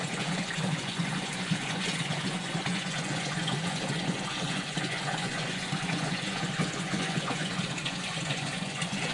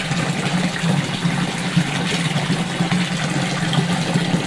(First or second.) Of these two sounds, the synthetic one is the first